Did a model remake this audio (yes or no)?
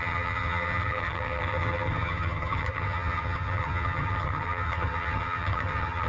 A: yes